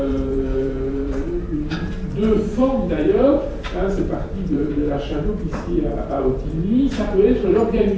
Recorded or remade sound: remade